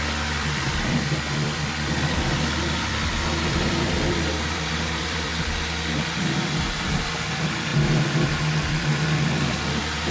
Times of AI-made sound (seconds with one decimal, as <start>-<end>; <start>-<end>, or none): 0.0-5.3; 6.7-10.1